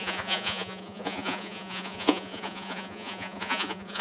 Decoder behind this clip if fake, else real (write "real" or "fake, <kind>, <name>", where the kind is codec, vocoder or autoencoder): fake, vocoder, Vocos